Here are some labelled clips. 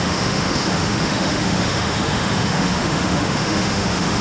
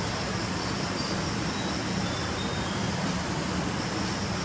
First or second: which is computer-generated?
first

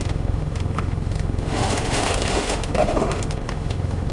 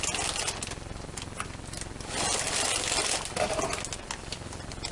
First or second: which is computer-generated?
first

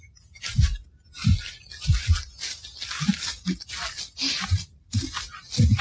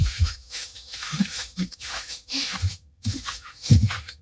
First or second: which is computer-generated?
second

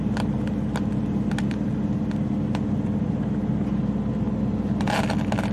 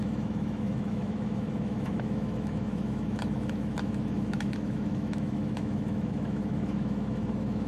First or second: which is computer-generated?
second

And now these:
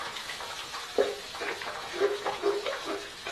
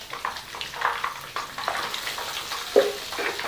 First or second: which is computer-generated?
first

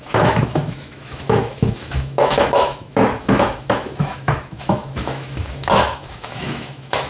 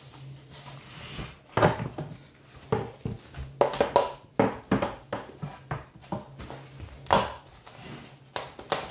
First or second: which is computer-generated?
first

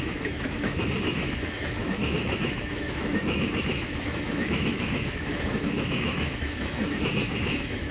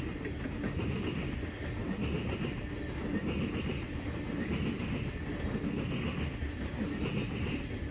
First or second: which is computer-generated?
first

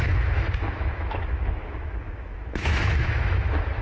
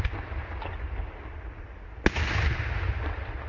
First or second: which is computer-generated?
first